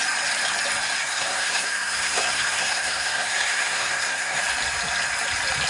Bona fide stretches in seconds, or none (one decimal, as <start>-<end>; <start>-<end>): 0.0-1.0; 4.4-5.7